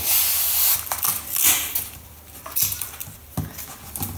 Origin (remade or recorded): recorded